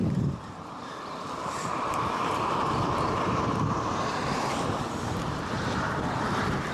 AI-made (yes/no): yes